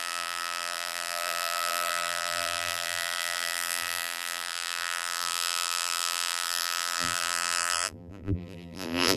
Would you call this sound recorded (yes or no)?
no